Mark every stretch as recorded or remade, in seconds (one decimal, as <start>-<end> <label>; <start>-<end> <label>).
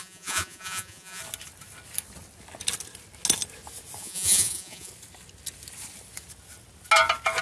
0.0-1.2 remade; 1.2-4.0 recorded; 4.0-4.9 remade; 4.9-7.4 recorded